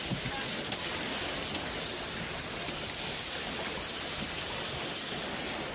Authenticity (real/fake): real